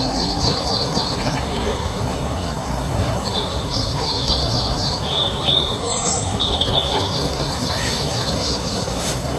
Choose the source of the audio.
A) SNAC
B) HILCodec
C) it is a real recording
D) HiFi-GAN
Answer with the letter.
A